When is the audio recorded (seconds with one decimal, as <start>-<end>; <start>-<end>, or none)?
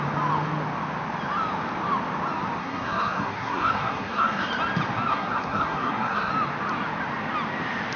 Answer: 0.0-2.6; 4.5-5.1; 6.3-8.0